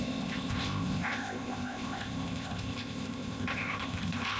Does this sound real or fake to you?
fake